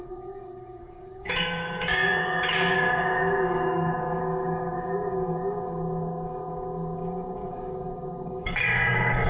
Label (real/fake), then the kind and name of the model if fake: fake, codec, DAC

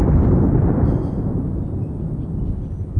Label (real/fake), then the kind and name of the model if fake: real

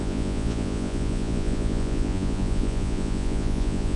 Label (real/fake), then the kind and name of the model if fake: fake, vocoder, Vocos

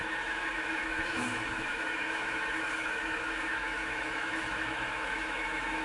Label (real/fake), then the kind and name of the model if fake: fake, autoencoder, DAC-VAE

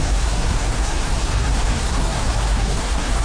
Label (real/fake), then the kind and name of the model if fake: fake, codec, SNAC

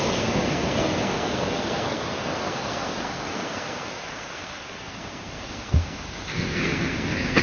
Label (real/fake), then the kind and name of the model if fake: fake, codec, SNAC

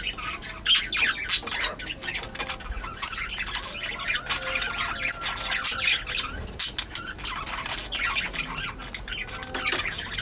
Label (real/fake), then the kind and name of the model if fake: real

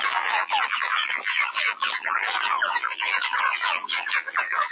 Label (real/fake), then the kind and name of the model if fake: fake, vocoder, BigVGAN v2